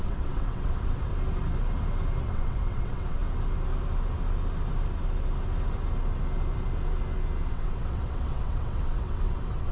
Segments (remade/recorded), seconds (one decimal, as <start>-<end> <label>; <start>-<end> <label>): 0.0-1.1 remade; 1.1-2.2 recorded; 2.2-3.2 remade; 3.2-7.5 recorded; 7.5-9.7 remade